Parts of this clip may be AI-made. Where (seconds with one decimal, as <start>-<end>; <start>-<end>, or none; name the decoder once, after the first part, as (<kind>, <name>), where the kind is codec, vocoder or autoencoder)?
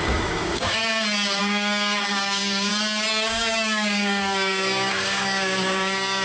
0.0-0.8 (codec, DAC); 1.4-2.7; 3.3-6.2